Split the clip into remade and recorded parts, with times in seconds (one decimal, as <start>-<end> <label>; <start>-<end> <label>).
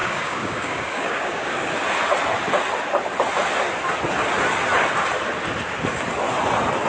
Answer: 0.0-1.7 remade; 1.7-6.9 recorded